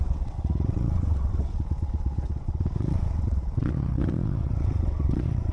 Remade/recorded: remade